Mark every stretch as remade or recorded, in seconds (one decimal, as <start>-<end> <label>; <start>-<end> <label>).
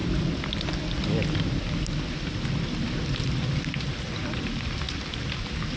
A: 0.0-5.8 recorded